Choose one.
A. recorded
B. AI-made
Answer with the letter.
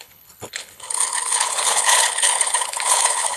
B